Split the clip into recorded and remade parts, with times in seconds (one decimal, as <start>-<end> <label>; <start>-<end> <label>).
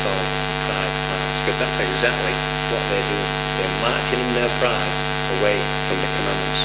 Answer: 0.0-6.6 recorded